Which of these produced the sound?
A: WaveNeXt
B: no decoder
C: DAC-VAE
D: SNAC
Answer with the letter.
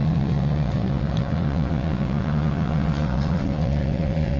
A